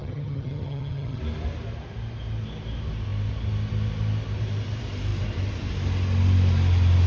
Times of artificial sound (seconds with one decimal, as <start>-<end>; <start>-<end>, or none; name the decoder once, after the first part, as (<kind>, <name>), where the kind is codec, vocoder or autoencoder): 0.0-1.2 (vocoder, HiFi-GAN)